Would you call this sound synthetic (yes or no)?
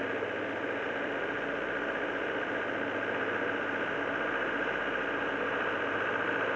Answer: no